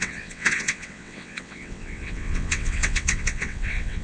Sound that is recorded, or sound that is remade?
remade